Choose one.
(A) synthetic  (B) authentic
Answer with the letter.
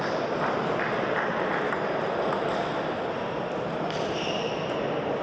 B